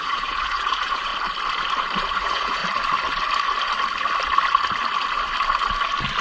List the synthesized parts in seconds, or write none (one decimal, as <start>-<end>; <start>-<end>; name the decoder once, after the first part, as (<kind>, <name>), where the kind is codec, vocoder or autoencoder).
0.0-1.1 (vocoder, Vocos); 2.1-2.6